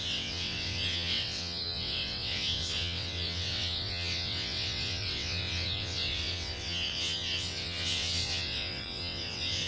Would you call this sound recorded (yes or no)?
no